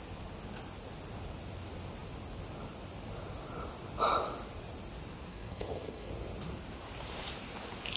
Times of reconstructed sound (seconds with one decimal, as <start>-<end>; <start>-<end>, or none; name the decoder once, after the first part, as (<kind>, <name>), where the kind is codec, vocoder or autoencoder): 5.3-6.1 (codec, SNAC)